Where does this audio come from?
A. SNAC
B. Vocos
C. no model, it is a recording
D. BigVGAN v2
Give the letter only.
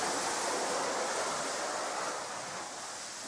C